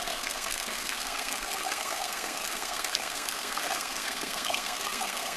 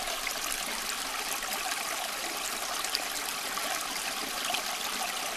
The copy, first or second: first